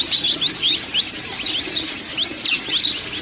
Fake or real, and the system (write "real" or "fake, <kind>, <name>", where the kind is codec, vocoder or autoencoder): real